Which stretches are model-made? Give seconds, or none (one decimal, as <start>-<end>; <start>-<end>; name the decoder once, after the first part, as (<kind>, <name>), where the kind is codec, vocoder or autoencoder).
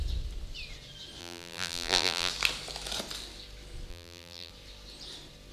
1.2-2.3 (vocoder, BigVGAN v2); 3.9-4.5